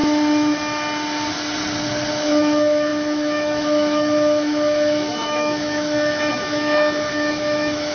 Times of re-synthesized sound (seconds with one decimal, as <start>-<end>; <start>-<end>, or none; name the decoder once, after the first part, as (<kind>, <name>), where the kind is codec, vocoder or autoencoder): 2.1-7.9 (autoencoder, DAC-VAE)